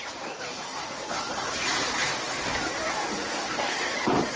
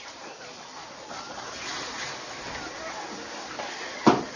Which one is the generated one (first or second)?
first